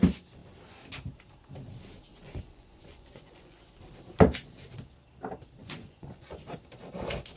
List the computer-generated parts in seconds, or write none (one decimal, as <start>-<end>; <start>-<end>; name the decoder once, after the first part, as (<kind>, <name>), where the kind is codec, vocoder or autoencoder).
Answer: 2.1-3.8 (vocoder, Vocos); 5.6-6.4